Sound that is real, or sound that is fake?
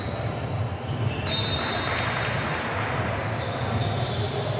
real